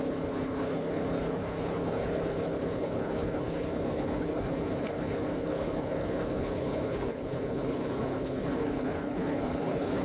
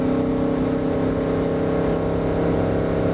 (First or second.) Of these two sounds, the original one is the second